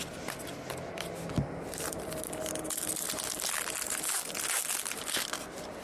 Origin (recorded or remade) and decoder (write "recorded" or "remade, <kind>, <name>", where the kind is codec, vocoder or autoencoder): recorded